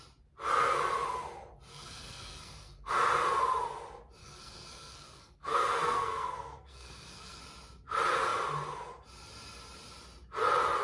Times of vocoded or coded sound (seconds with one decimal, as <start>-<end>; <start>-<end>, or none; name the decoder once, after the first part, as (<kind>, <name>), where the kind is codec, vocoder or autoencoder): 1.7-2.9 (codec, SNAC); 4.2-7.4